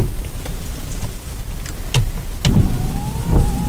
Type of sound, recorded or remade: recorded